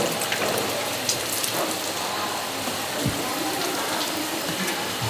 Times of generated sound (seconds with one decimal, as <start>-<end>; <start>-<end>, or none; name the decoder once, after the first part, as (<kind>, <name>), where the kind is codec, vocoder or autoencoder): none